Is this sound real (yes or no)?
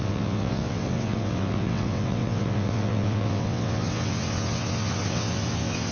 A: no